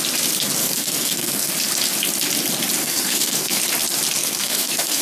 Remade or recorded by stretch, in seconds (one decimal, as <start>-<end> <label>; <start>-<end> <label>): 0.0-0.6 recorded; 0.6-1.5 remade; 1.5-2.8 recorded; 2.8-3.6 remade; 3.6-4.2 recorded; 4.2-5.0 remade